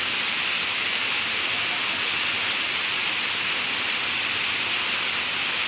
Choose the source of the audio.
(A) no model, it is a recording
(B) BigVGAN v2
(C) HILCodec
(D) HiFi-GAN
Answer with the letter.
A